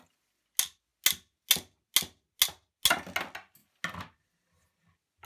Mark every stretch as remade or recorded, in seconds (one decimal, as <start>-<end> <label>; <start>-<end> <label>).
0.0-5.3 recorded